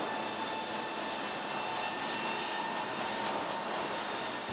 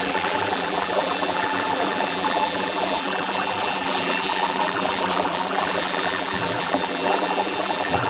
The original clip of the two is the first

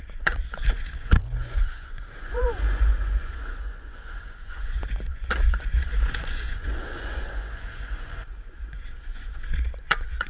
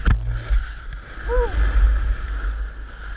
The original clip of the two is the second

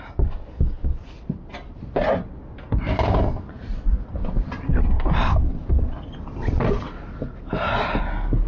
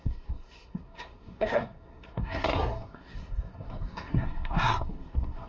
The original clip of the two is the first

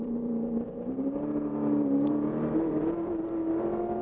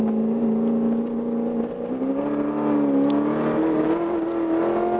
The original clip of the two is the second